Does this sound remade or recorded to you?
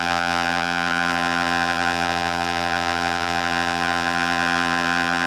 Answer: remade